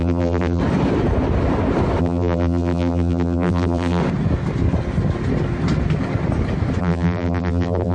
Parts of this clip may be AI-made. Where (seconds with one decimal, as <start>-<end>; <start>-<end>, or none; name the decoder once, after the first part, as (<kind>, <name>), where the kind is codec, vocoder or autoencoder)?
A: 0.0-0.6 (vocoder, BigVGAN v2); 2.0-4.0; 6.8-7.9